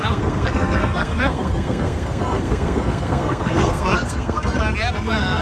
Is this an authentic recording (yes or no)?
no